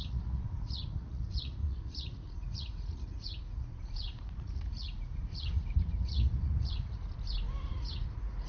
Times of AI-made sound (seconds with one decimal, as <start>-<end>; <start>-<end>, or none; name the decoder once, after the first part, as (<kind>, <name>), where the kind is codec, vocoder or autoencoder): 0.0-7.1 (vocoder, Vocos); 7.7-8.5